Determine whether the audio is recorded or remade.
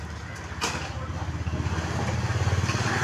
recorded